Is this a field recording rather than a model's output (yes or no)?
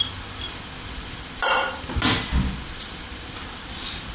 no